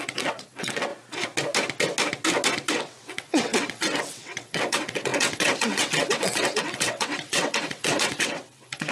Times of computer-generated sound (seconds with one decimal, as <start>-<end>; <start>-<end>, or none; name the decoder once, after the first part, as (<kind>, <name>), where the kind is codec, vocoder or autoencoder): 0.0-0.9 (vocoder, WaveNeXt); 2.7-8.9

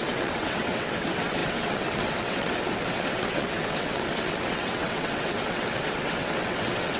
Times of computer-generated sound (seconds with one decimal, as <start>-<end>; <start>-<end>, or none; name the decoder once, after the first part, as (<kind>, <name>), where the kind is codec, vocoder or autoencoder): 0.0-7.0 (vocoder, WaveNeXt)

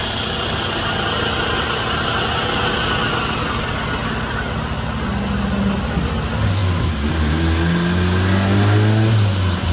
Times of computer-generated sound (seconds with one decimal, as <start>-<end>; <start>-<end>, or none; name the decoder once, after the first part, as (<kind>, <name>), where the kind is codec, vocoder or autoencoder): none

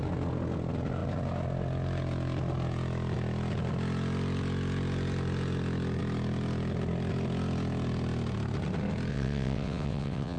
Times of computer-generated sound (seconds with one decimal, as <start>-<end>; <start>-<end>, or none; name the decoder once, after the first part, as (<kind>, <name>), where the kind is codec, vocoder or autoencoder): 9.1-10.4 (vocoder, WaveNeXt)

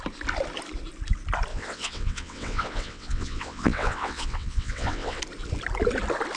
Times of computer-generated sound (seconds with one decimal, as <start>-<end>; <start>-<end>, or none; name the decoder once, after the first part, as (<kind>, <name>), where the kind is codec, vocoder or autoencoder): 1.5-5.2 (vocoder, WaveNeXt)

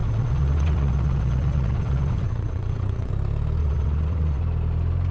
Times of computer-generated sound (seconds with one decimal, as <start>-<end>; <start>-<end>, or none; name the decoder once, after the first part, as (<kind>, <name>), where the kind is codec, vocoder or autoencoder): 0.0-3.1 (vocoder, WaveNeXt); 3.6-4.4